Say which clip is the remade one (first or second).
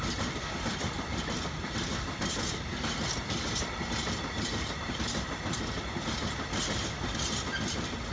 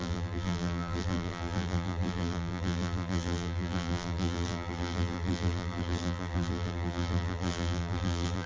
second